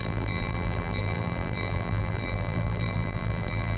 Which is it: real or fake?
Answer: fake